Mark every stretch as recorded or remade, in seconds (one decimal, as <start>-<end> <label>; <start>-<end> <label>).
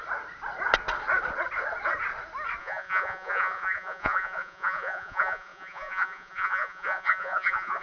0.0-2.6 recorded; 2.6-7.8 remade